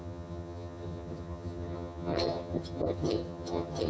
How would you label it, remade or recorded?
remade